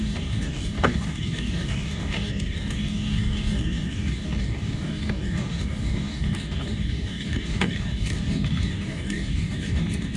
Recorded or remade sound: remade